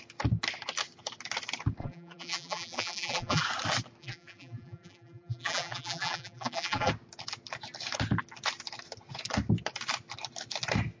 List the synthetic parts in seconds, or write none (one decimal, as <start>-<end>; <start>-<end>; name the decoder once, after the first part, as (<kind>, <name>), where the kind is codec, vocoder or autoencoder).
1.8-3.4 (vocoder, BigVGAN v2); 4.0-6.9